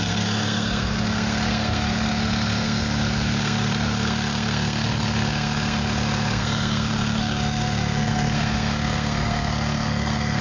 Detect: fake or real fake